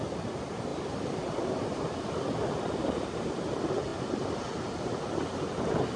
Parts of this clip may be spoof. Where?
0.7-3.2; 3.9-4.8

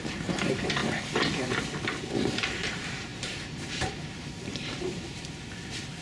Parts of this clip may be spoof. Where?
0.0-0.8; 2.1-6.0

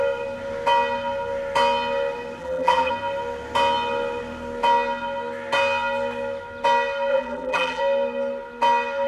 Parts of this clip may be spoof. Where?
2.4-2.9; 7.1-7.8

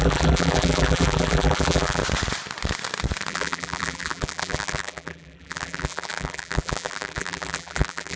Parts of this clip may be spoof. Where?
0.0-2.0; 3.3-8.2

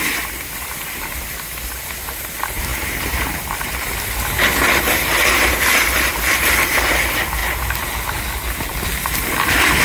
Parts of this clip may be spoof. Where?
0.0-2.7; 6.9-7.4; 8.1-9.8

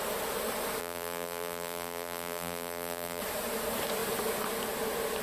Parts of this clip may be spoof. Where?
0.8-3.2

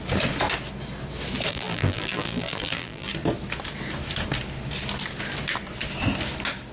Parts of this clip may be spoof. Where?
1.5-3.1